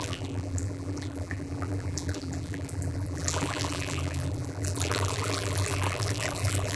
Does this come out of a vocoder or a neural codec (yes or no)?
yes